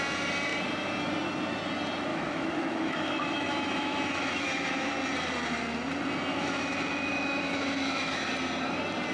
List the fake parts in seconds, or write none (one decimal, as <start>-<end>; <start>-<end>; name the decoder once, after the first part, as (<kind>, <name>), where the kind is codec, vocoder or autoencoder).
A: 2.1-4.9 (autoencoder, DAC-VAE); 6.3-8.3

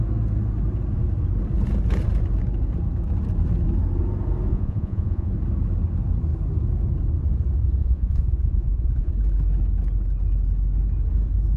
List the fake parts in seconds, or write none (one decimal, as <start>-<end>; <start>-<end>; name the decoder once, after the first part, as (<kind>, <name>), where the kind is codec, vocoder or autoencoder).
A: 4.5-5.3 (vocoder, Vocos); 7.8-9.1